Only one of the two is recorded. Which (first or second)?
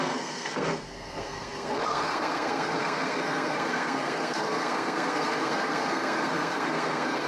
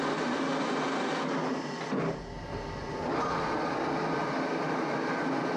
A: second